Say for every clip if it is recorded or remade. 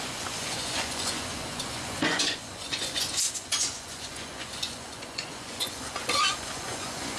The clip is remade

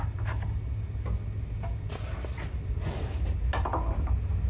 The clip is recorded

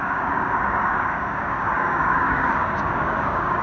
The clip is remade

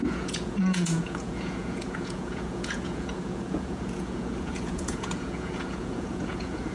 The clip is remade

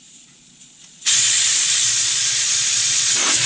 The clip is remade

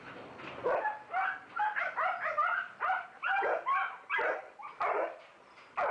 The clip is recorded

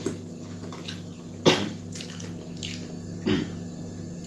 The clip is recorded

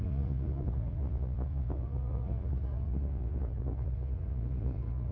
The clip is remade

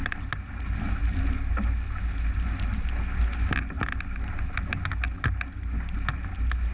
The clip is recorded